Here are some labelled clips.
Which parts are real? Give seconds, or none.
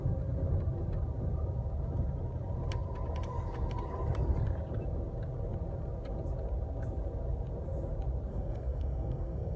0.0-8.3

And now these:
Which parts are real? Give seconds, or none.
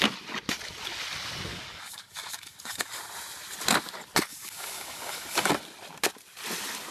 0.0-1.5; 3.0-4.3; 5.5-6.9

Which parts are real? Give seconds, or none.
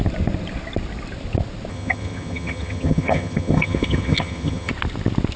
0.0-1.7; 4.7-5.4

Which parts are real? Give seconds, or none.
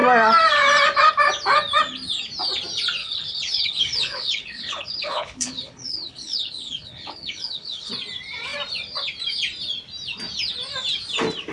0.0-3.0; 7.9-11.5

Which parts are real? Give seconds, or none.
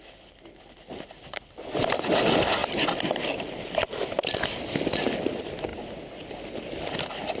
0.0-7.4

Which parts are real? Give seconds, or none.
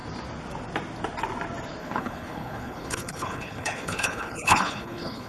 0.0-1.8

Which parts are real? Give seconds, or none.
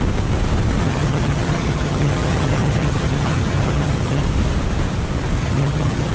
0.0-0.8; 4.2-5.4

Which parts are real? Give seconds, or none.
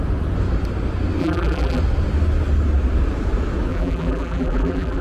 0.0-1.2; 1.8-3.7